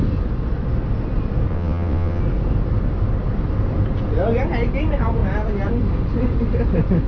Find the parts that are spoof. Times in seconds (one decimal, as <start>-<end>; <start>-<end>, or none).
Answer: 1.5-2.2